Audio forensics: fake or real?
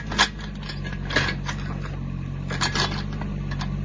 real